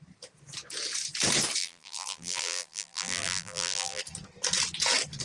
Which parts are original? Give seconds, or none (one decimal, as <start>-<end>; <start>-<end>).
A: 0.0-1.6; 4.0-5.2